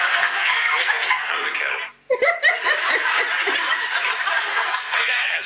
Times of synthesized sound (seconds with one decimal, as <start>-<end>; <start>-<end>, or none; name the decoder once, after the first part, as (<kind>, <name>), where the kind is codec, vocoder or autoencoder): 0.0-1.3 (codec, SNAC); 4.5-5.5